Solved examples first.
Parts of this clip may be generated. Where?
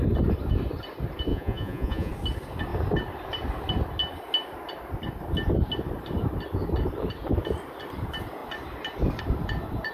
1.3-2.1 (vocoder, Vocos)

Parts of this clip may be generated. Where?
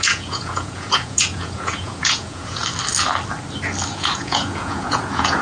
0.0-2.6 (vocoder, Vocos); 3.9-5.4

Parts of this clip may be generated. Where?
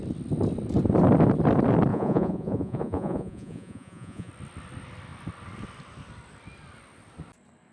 1.9-4.3 (vocoder, Vocos)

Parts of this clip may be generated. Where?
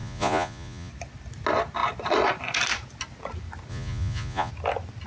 0.0-0.9 (vocoder, Vocos); 3.7-4.5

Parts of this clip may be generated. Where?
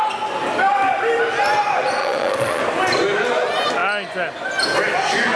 2.0-2.6 (vocoder, Vocos)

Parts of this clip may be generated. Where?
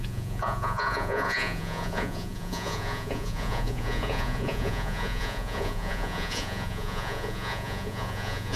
0.0-8.6 (vocoder, Vocos)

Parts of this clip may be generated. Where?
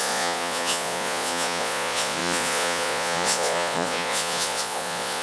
0.0-5.2 (vocoder, Vocos)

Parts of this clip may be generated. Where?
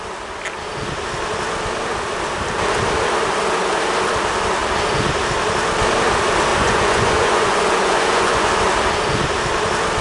6.5-8.5 (vocoder, Vocos)